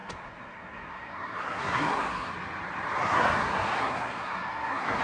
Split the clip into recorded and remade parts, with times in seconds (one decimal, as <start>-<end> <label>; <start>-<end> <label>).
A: 0.0-2.3 remade; 2.3-3.0 recorded; 3.0-5.0 remade